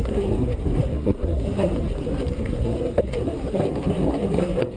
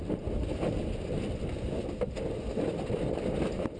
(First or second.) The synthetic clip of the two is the first